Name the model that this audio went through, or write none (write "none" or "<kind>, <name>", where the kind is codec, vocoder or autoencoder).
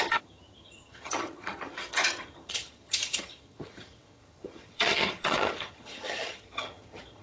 vocoder, HiFi-GAN